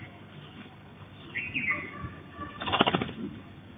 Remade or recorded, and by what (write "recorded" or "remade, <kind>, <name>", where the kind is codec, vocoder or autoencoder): remade, codec, DAC